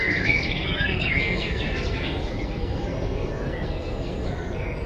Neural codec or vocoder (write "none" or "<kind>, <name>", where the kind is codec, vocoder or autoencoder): codec, SNAC